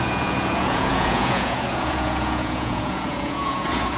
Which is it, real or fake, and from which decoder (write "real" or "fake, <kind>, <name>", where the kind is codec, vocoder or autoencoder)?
fake, vocoder, Vocos